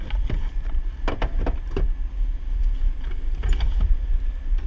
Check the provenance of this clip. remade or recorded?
recorded